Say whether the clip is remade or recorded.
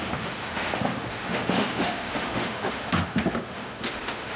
remade